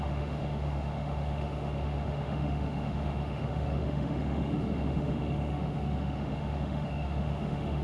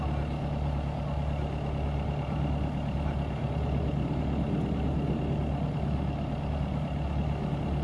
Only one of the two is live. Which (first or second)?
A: second